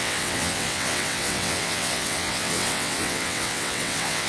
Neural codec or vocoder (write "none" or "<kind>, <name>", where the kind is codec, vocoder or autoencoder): vocoder, WaveNeXt